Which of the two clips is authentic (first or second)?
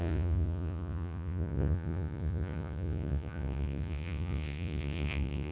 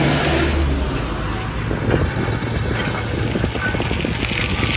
second